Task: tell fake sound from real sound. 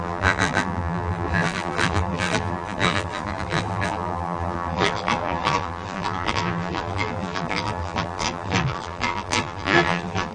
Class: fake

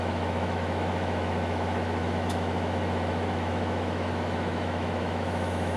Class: fake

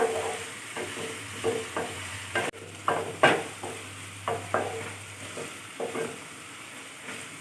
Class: real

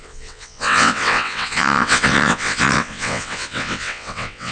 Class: fake